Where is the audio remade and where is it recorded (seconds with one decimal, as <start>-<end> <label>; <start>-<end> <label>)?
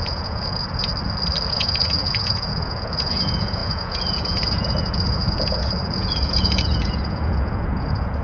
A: 0.0-0.9 remade; 0.9-1.5 recorded; 1.5-8.2 remade